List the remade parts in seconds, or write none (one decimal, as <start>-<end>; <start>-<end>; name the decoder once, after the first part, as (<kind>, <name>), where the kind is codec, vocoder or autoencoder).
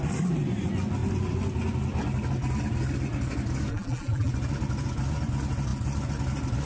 3.7-4.3 (vocoder, BigVGAN v2)